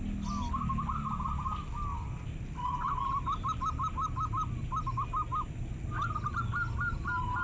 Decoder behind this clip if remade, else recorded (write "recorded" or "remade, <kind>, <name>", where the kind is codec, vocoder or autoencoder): recorded